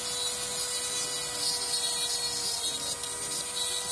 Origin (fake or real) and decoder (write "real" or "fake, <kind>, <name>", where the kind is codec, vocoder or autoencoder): real